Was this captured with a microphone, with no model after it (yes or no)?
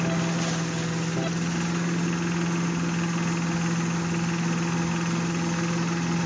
yes